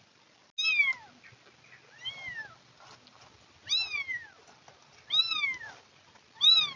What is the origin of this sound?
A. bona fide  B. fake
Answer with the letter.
A